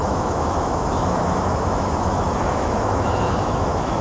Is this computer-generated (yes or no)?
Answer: yes